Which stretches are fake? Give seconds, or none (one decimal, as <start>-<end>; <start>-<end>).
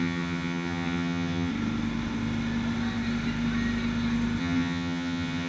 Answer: 0.0-1.5; 4.4-5.5